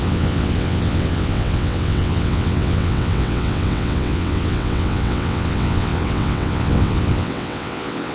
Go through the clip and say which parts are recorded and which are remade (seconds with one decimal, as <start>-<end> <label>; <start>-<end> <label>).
0.0-8.1 remade